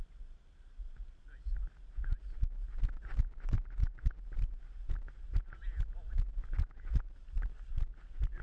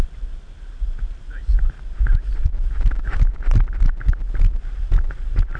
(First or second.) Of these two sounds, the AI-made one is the second